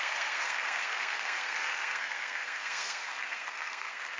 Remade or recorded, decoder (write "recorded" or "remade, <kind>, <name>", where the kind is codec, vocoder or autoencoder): remade, codec, SNAC